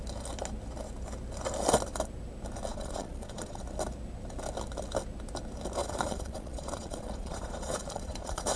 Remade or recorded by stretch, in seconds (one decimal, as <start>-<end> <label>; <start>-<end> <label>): 0.0-2.7 recorded; 2.7-3.6 remade; 3.6-5.8 recorded; 5.8-8.6 remade